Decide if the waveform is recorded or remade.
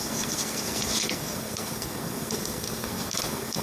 remade